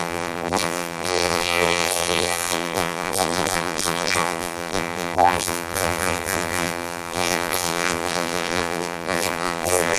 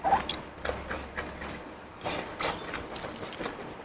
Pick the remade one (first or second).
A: first